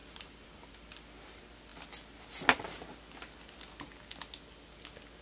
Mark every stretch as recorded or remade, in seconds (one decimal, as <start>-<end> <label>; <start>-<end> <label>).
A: 0.0-0.7 remade; 0.7-5.2 recorded